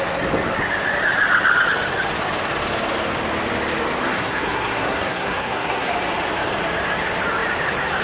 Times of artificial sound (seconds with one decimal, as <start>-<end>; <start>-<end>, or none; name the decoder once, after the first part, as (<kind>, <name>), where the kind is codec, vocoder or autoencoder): 4.0-5.9 (codec, SNAC)